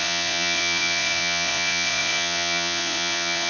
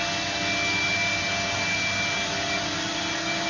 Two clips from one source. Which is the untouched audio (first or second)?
second